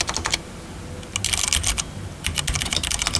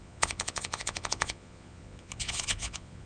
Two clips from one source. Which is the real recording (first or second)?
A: first